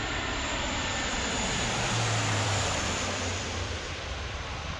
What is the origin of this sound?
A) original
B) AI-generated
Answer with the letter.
B